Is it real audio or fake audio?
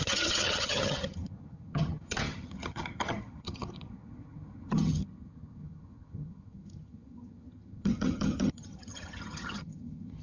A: fake